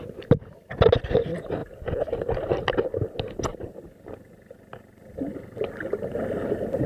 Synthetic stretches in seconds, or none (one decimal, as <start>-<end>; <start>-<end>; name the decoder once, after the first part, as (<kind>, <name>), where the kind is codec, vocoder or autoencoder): none